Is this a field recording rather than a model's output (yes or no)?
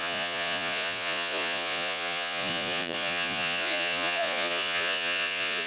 no